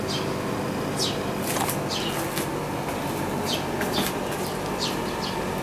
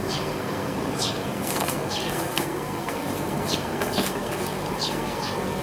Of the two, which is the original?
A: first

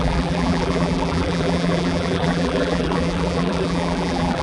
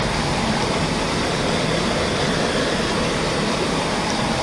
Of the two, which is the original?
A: second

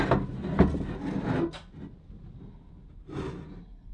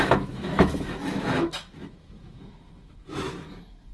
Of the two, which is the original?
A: first